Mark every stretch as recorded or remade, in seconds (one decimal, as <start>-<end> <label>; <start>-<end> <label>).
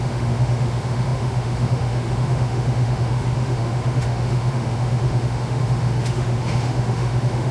0.0-7.5 remade